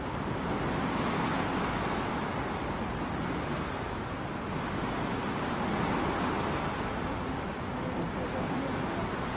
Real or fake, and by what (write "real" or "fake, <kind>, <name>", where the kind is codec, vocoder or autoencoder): real